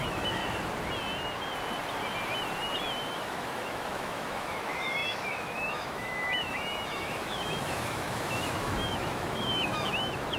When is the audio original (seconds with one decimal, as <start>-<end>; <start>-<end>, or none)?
0.4-3.1